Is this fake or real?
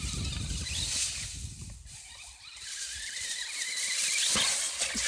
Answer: real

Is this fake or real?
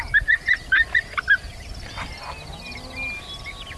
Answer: real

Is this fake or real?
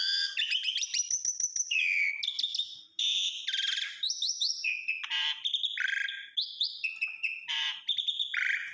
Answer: real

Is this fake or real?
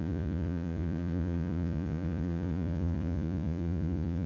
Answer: fake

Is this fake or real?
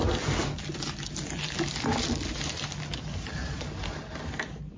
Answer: real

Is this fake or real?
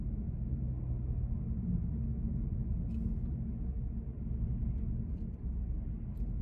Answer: real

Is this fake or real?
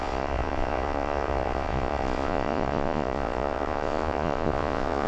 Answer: fake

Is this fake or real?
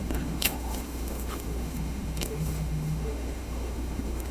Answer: fake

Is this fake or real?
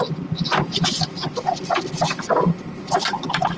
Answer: fake